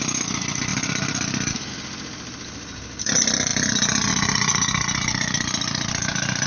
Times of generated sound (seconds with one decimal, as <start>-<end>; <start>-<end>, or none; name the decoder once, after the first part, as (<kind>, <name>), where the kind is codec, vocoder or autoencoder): none